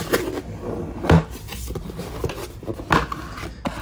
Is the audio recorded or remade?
recorded